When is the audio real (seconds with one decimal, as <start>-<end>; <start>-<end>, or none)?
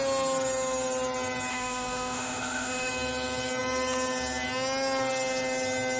0.0-1.5; 2.9-6.0